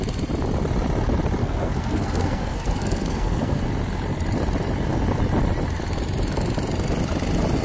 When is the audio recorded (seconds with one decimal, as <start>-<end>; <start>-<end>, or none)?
0.0-1.4; 3.6-7.6